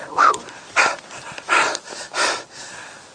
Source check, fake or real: real